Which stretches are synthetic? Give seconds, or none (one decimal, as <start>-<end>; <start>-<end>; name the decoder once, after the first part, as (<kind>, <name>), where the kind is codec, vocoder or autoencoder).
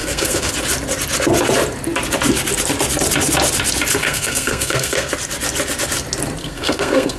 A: 0.0-0.5 (codec, SNAC); 4.0-5.1; 6.4-7.2